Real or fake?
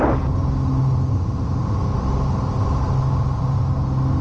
real